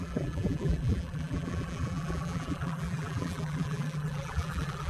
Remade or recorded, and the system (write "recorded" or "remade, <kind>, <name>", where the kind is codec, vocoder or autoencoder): remade, vocoder, BigVGAN v2